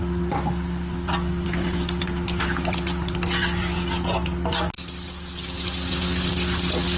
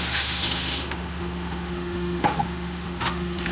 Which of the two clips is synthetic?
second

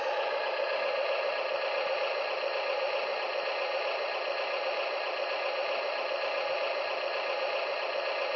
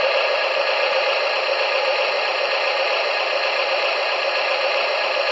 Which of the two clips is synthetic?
second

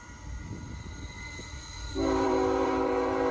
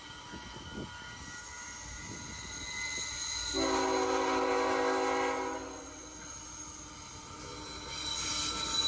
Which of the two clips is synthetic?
first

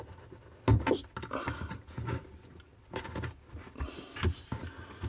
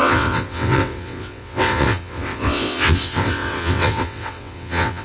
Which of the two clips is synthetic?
second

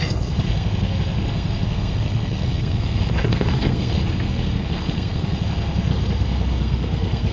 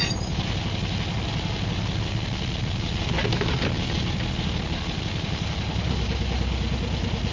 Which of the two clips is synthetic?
first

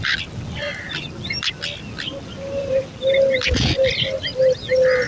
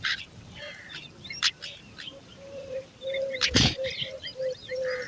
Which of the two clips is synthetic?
second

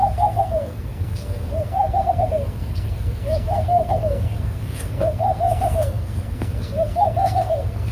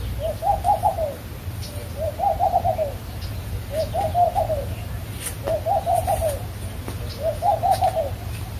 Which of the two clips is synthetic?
first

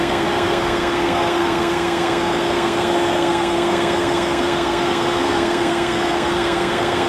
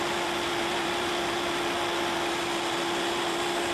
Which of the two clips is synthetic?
first